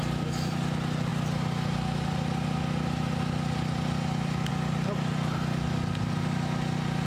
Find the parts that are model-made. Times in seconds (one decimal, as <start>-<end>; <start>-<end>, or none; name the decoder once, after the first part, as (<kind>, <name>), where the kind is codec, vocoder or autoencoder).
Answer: none